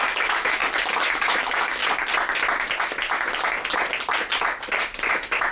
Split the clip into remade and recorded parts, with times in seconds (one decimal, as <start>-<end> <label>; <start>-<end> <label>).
0.0-0.6 remade; 0.6-1.1 recorded; 1.1-1.8 remade; 1.8-5.1 recorded; 5.1-5.5 remade